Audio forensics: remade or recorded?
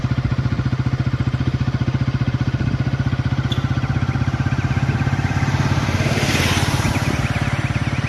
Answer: recorded